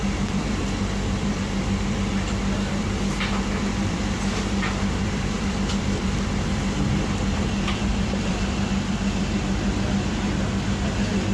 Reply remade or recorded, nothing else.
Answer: remade